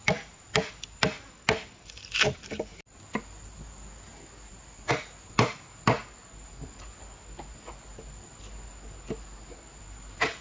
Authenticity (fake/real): real